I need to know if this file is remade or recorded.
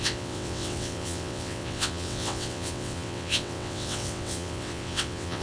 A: remade